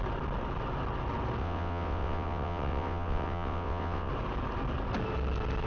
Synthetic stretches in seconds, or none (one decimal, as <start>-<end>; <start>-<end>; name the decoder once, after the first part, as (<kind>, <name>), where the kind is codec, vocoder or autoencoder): 1.4-4.1 (vocoder, WaveNeXt)

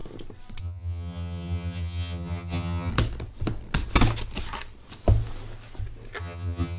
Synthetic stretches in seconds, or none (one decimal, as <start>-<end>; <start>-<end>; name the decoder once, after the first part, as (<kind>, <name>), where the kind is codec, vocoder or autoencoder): 0.6-2.9 (vocoder, HiFi-GAN); 6.2-6.8

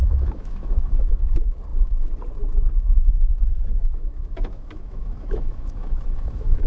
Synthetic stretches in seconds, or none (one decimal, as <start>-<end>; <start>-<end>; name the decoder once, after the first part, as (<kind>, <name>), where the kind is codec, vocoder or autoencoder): 0.0-1.1 (autoencoder, DAC-VAE); 3.8-6.7

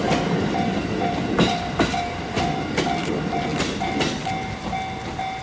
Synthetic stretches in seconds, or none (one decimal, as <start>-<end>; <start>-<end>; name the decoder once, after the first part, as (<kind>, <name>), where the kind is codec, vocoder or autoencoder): none

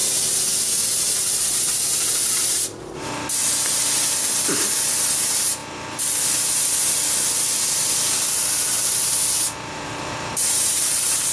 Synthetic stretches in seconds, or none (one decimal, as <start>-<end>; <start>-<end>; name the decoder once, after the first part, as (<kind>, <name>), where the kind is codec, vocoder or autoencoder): none

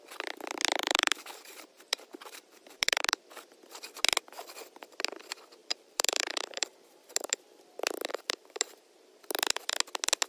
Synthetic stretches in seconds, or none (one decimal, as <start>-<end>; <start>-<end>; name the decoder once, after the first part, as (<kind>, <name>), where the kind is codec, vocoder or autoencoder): 0.8-3.2 (vocoder, BigVGAN v2); 5.6-7.4; 8.1-9.2

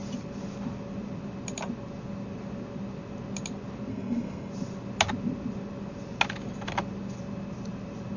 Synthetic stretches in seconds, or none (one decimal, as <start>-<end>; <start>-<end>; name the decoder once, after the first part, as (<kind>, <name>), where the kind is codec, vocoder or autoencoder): 3.9-4.5 (codec, SNAC)

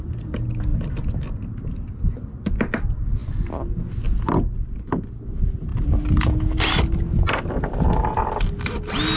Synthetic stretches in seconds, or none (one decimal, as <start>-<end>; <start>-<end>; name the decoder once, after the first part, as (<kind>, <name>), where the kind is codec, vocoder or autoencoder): none